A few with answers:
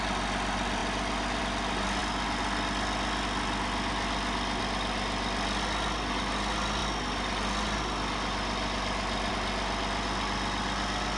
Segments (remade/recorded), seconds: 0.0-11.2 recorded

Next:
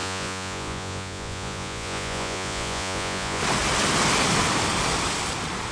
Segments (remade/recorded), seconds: 0.0-3.4 remade; 3.4-5.7 recorded

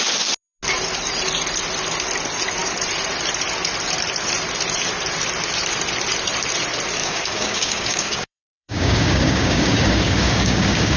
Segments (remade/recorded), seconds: 0.0-7.0 recorded; 7.0-11.0 remade

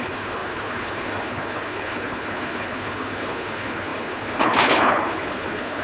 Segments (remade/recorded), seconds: 0.0-5.8 remade

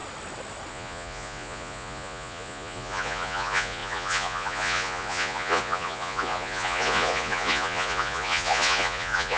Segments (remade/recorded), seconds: 0.0-0.7 recorded; 0.7-9.4 remade

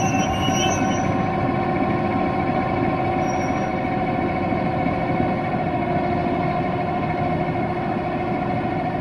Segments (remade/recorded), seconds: 0.0-9.0 recorded

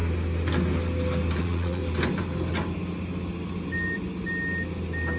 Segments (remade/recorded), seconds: 0.0-1.4 recorded; 1.4-1.8 remade; 1.8-5.2 recorded